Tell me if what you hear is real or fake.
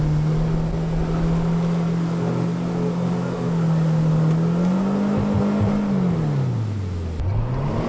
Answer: real